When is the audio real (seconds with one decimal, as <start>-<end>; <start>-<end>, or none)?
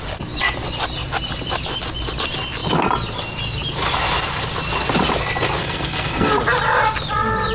0.0-5.6; 6.3-7.5